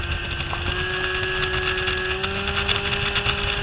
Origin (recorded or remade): recorded